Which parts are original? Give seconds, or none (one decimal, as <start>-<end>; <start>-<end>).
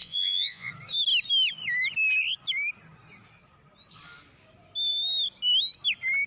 0.7-6.3